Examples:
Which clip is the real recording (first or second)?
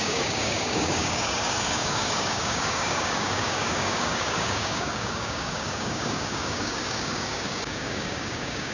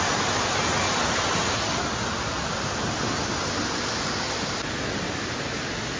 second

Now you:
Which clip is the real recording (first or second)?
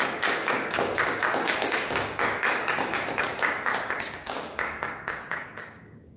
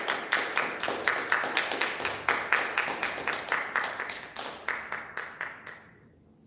second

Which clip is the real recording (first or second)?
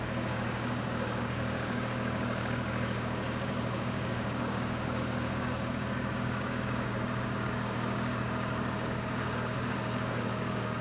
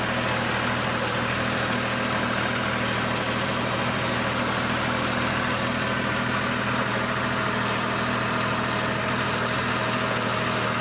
second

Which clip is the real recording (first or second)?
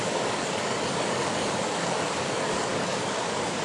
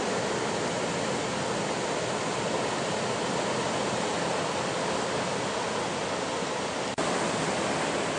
second